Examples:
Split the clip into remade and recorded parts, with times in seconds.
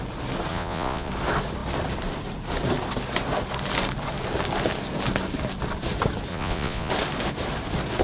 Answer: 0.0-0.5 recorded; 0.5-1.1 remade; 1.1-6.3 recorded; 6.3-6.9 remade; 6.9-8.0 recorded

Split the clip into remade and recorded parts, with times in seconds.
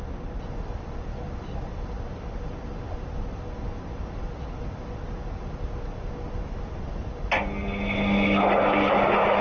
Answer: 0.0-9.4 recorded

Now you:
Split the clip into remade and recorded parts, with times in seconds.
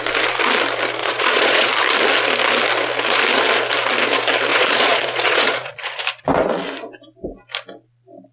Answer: 0.0-1.0 recorded; 1.0-1.7 remade; 1.7-4.5 recorded; 4.5-6.0 remade; 6.0-8.3 recorded